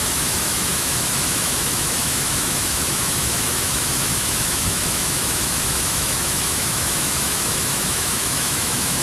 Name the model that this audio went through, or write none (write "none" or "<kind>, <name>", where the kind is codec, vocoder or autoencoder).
autoencoder, DAC-VAE